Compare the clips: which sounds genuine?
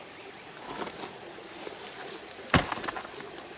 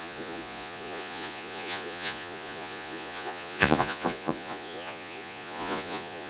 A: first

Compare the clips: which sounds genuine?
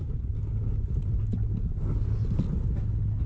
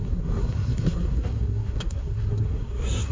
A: first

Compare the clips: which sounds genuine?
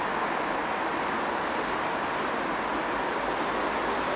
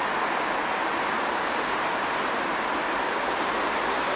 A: first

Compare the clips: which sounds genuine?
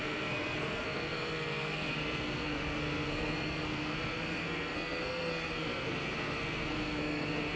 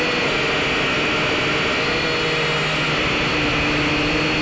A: second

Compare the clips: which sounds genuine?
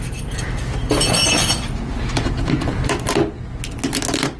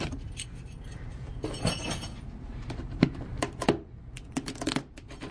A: first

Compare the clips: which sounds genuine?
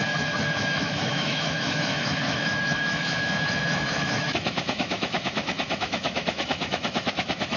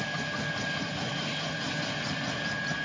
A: second